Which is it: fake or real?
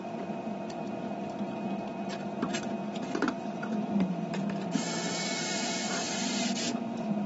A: fake